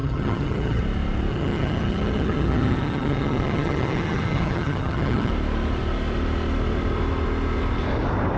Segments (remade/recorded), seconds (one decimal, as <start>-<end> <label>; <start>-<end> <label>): 0.0-0.8 remade; 0.8-1.3 recorded; 1.3-5.3 remade; 5.3-8.4 recorded